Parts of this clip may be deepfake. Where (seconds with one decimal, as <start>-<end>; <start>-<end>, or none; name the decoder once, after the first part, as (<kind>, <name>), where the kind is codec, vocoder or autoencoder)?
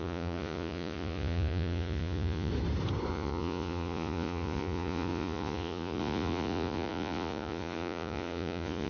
0.0-2.5 (vocoder, Vocos); 3.1-8.9